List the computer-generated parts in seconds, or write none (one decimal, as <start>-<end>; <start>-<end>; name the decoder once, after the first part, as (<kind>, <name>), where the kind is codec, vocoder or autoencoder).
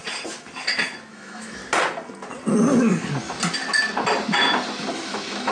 1.1-1.6 (autoencoder, DAC-VAE); 4.9-5.5